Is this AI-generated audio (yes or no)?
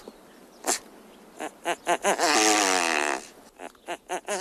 no